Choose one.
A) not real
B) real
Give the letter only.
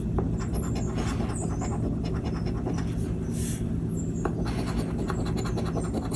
B